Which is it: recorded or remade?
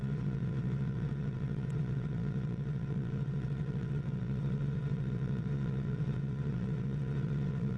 remade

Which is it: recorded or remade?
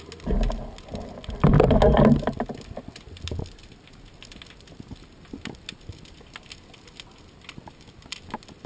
recorded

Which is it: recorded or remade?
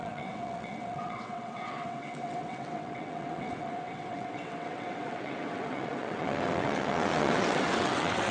remade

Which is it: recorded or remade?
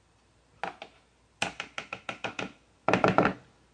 recorded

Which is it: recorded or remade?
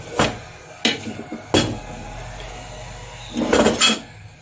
recorded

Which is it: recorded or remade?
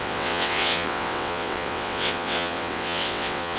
remade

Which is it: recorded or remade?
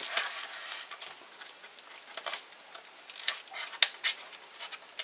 recorded